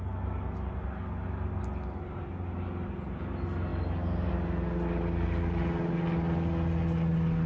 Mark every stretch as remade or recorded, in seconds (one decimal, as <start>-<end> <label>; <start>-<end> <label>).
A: 0.0-7.5 recorded